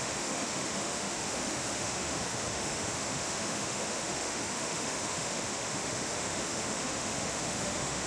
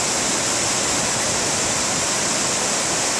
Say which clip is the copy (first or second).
first